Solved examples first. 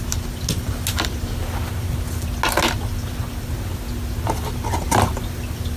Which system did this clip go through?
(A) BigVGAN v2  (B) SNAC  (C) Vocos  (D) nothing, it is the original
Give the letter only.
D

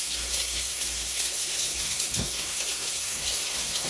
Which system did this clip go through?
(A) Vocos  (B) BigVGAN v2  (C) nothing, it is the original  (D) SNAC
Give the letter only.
D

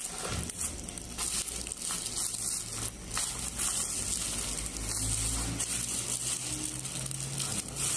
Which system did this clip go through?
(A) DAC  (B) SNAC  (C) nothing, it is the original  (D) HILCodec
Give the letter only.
C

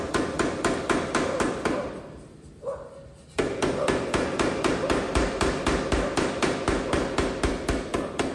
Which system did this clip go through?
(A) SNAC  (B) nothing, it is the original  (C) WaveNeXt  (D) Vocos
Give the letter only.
B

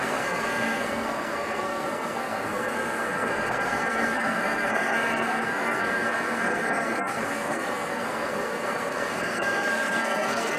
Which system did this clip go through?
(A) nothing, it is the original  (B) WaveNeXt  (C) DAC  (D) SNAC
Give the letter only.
D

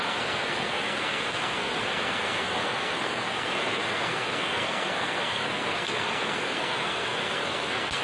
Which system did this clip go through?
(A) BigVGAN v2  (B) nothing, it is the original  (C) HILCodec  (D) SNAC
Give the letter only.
D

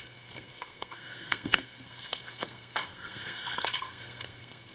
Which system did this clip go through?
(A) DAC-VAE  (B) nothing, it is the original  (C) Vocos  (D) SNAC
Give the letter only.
D